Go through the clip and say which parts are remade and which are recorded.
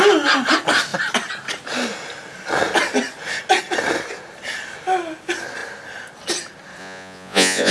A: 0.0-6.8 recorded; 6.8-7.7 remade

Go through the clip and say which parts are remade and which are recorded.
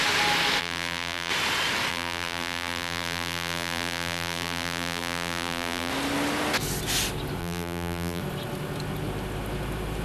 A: 0.0-0.6 recorded; 0.6-1.3 remade; 1.3-1.9 recorded; 1.9-5.9 remade; 5.9-7.4 recorded; 7.4-8.2 remade; 8.2-10.0 recorded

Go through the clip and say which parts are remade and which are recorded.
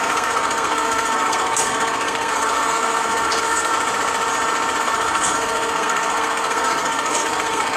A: 0.0-3.7 remade; 3.7-4.8 recorded; 4.8-7.8 remade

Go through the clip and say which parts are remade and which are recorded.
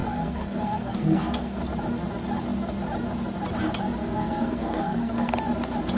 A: 0.0-1.6 remade; 1.6-4.0 recorded; 4.0-5.3 remade; 5.3-6.0 recorded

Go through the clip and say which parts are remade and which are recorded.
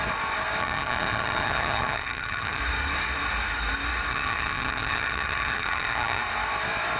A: 0.0-0.6 recorded; 0.6-2.6 remade; 2.6-4.1 recorded; 4.1-6.2 remade; 6.2-7.0 recorded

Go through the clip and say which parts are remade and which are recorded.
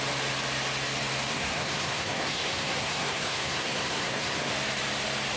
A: 0.0-1.3 recorded; 1.3-4.5 remade; 4.5-5.4 recorded